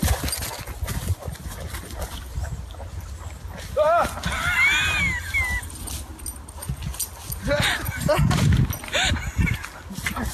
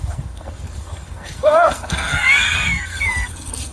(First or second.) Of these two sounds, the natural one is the first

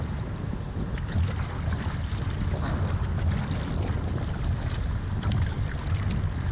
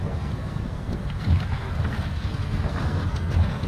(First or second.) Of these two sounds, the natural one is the first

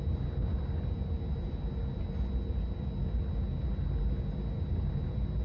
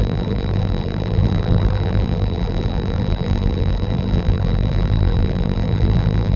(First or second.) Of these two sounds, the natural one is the first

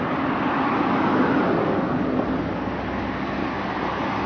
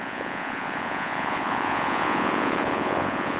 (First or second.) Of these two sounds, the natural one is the first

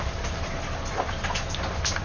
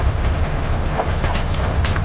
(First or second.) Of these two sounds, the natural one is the first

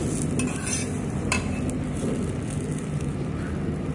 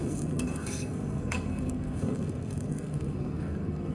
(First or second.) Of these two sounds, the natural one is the first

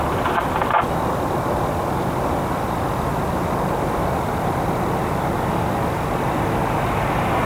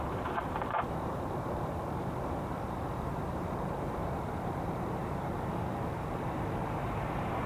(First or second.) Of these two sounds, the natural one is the first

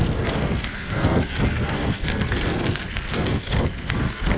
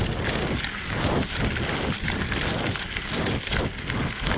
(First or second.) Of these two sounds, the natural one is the second